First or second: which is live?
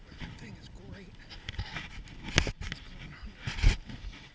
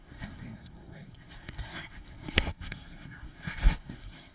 first